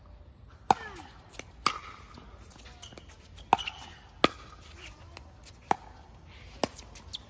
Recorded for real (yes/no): yes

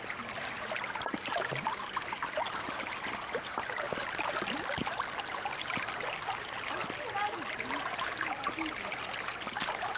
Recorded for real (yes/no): yes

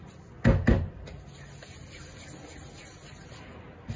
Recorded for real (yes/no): yes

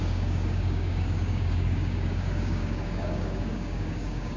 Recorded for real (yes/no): no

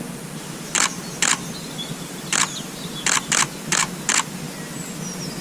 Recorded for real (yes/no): yes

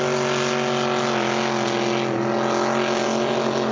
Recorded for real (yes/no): yes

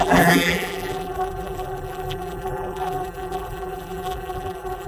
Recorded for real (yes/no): no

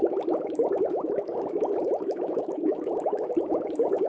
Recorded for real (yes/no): no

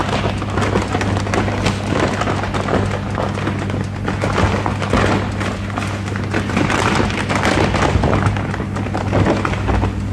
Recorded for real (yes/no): yes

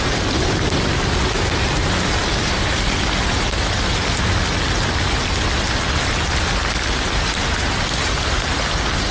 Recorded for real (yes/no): yes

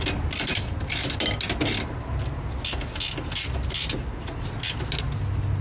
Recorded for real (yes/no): yes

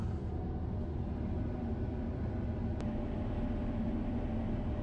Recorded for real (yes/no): yes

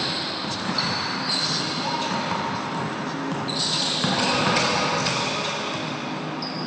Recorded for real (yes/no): yes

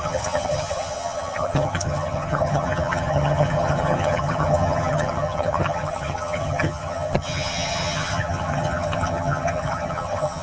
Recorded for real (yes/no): no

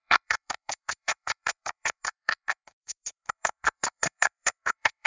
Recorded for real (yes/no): no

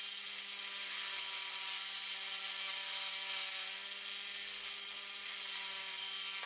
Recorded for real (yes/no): yes